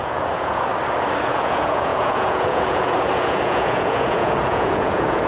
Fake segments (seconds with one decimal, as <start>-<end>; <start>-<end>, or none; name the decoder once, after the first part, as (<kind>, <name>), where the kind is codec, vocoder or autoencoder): 0.0-0.7 (vocoder, Vocos); 1.2-5.3